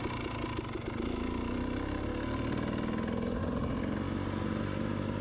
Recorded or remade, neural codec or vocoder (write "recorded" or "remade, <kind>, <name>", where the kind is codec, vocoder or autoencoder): recorded